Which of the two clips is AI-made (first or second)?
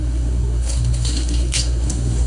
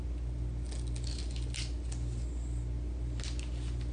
first